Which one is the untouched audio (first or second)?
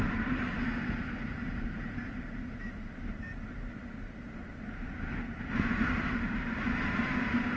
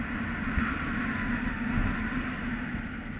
second